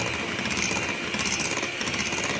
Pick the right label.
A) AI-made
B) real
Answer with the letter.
B